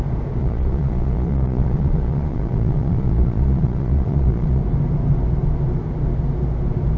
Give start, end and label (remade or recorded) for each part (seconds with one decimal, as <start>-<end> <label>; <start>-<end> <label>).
0.0-0.4 recorded; 0.4-4.6 remade; 4.6-7.0 recorded